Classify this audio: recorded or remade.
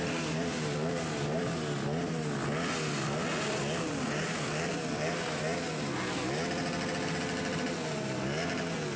recorded